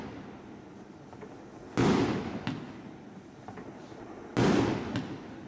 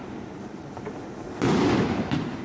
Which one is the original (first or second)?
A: first